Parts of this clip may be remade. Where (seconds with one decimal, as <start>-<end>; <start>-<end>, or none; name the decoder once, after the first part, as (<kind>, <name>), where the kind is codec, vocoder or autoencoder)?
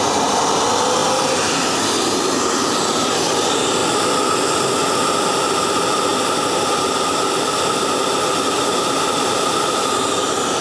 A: 6.1-7.1 (vocoder, BigVGAN v2)